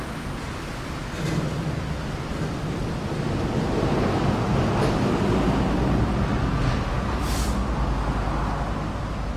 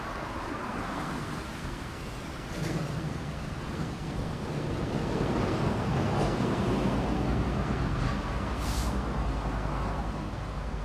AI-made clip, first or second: second